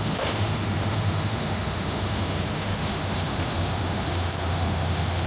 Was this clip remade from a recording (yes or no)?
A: yes